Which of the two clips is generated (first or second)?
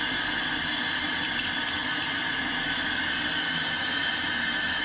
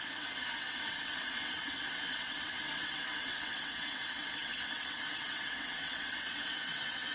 second